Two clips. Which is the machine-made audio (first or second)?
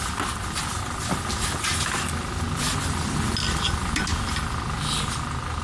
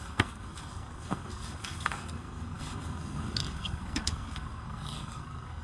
second